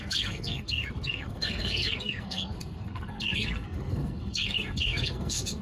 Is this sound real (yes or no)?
no